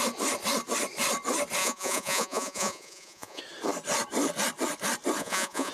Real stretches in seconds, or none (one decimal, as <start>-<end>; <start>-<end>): 0.0-1.6; 3.4-5.2